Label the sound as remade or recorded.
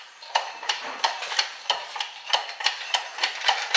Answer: remade